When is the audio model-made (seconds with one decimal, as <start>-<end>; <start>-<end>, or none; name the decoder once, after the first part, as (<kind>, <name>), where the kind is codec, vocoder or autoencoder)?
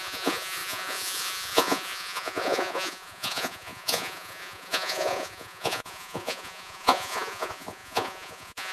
0.0-8.7 (vocoder, Vocos)